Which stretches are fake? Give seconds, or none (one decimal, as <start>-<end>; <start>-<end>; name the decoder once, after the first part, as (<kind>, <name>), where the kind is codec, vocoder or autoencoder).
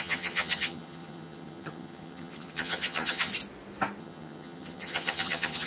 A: 0.0-3.3 (vocoder, HiFi-GAN); 4.0-5.7